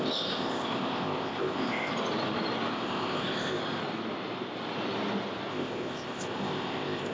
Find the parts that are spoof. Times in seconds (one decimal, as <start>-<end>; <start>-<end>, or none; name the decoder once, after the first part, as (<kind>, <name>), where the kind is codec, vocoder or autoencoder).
0.0-1.9 (codec, ZipCodec); 2.7-3.6; 5.5-7.1